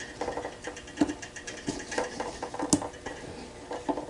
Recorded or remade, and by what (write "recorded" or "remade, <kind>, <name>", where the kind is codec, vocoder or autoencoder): recorded